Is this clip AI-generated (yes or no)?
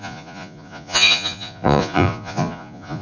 yes